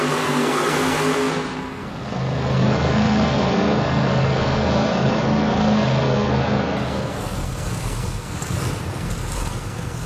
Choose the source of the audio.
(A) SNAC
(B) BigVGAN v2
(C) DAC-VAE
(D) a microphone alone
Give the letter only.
A